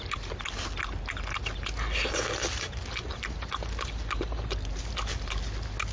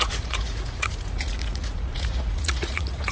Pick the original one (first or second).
first